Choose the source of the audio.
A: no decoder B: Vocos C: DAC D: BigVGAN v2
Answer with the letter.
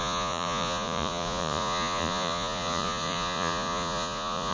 B